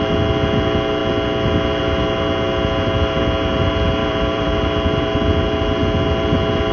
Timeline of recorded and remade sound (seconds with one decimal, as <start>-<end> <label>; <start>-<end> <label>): 0.0-4.0 recorded; 4.0-4.7 remade; 4.7-6.7 recorded